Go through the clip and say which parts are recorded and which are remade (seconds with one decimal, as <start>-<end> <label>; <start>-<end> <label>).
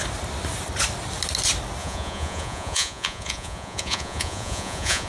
0.0-1.8 recorded; 1.8-5.1 remade